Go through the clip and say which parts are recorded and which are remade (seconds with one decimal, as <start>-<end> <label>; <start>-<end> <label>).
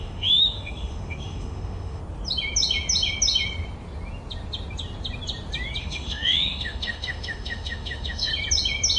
0.0-2.0 remade; 2.0-5.8 recorded; 5.8-8.3 remade; 8.3-9.0 recorded